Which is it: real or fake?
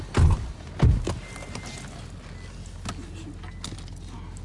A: real